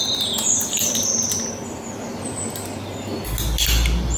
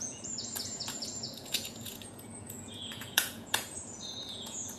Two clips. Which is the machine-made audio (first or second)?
second